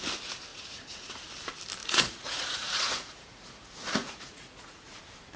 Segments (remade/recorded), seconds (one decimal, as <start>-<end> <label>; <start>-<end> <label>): 0.0-0.5 recorded; 0.5-1.2 remade; 1.2-1.8 recorded; 1.8-5.0 remade; 5.0-5.4 recorded